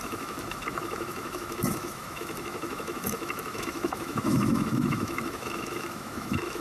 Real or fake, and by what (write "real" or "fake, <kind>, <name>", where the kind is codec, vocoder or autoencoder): fake, autoencoder, DAC-VAE